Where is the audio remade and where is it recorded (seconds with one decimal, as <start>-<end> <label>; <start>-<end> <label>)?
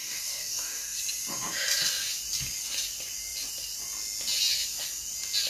0.0-1.0 remade; 1.0-5.5 recorded